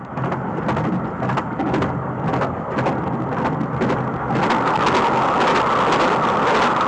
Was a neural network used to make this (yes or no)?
no